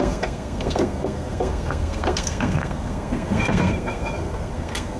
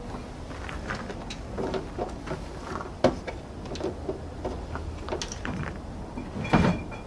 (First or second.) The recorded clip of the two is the second